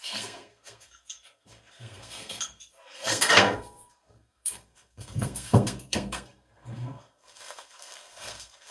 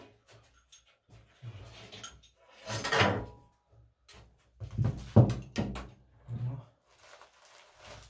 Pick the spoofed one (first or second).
first